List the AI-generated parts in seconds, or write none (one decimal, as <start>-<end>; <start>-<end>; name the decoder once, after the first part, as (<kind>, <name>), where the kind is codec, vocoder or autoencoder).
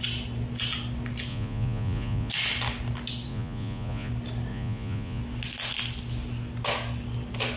1.3-2.3 (vocoder, Vocos); 3.3-4.1; 4.5-5.2